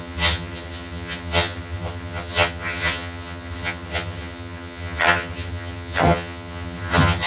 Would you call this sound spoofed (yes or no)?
yes